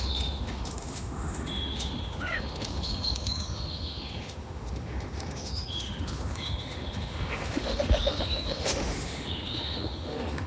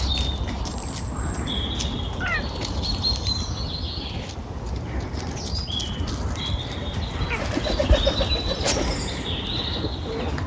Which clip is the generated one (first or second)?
first